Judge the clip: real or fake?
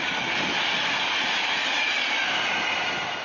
real